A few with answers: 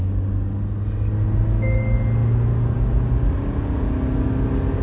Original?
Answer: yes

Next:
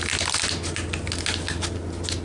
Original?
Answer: yes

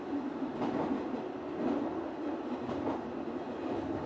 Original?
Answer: yes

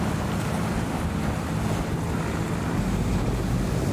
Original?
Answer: yes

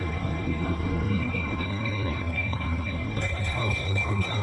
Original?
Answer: no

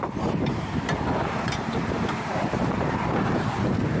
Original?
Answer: no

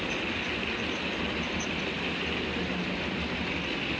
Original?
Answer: yes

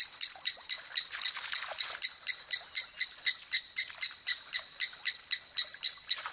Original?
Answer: no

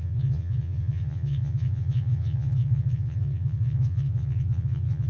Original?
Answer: no